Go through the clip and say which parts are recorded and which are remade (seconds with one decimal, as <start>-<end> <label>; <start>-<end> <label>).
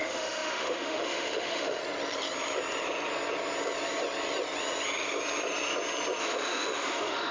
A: 0.0-1.8 remade; 1.8-6.2 recorded; 6.2-7.3 remade